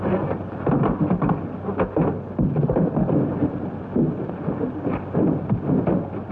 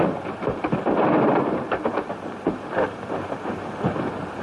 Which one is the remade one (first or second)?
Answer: second